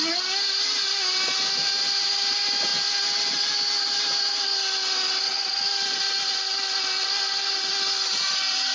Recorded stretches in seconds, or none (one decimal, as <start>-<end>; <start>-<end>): 0.0-8.7